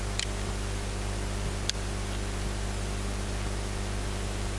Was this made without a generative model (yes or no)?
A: yes